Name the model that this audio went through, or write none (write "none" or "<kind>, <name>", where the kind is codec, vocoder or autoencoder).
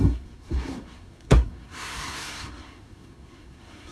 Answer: codec, SNAC